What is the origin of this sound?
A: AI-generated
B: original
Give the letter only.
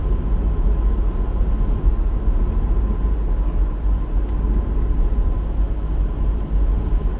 B